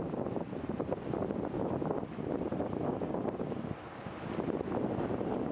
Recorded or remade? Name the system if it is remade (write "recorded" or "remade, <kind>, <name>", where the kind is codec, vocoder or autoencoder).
recorded